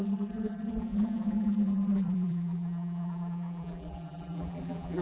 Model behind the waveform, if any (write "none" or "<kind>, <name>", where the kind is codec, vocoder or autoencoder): vocoder, BigVGAN v2